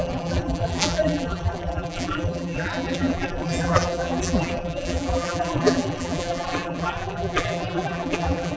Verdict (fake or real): fake